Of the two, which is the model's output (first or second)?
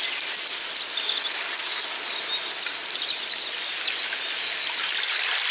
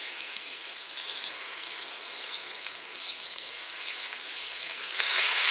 second